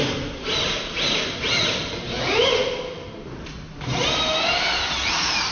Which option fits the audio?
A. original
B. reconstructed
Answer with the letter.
A